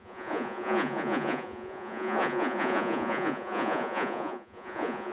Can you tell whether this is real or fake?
fake